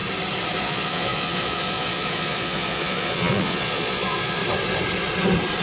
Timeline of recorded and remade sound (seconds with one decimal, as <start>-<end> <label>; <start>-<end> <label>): 0.0-0.6 recorded; 0.6-4.4 remade; 4.4-5.6 recorded